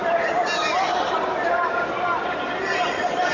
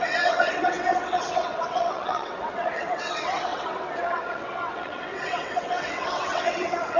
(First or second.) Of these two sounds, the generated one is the second